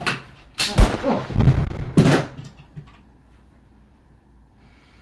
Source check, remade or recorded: remade